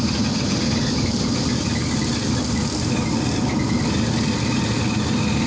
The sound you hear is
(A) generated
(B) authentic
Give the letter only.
B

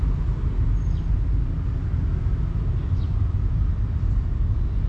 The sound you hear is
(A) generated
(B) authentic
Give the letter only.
B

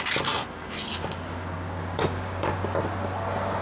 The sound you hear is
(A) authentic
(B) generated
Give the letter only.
A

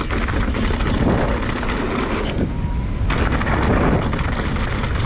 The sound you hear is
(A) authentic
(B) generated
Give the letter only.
A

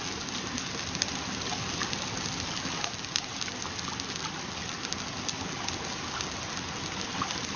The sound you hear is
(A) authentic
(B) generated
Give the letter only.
A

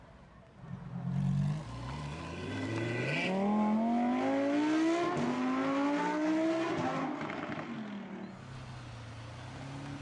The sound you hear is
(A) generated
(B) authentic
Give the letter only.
B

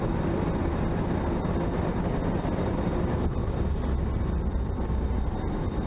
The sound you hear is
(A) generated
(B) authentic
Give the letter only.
A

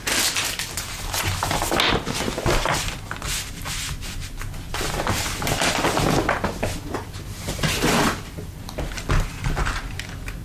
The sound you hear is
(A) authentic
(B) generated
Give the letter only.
A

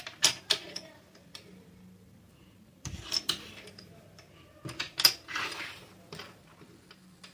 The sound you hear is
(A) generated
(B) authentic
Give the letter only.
A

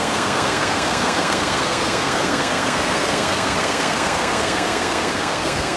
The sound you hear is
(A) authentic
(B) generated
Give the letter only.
B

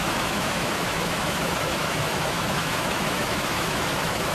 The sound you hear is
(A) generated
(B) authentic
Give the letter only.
A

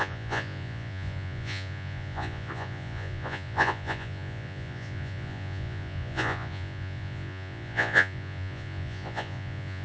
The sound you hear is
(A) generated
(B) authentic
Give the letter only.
A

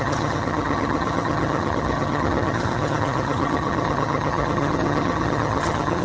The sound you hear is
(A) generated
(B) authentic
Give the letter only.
A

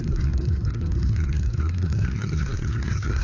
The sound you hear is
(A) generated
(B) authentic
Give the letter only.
A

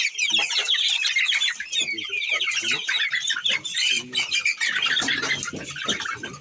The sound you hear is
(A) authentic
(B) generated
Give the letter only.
A